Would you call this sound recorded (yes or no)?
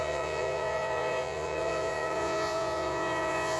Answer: no